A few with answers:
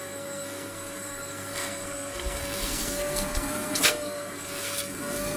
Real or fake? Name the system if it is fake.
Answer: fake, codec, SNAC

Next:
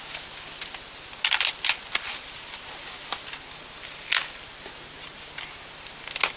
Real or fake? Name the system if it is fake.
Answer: real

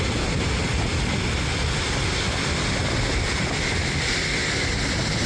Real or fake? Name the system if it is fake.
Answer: real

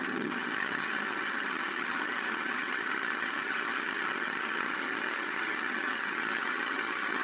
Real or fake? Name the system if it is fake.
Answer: fake, vocoder, HiFi-GAN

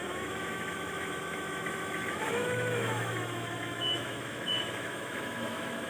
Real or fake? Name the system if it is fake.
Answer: fake, autoencoder, DAC-VAE